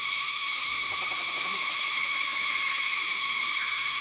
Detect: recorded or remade remade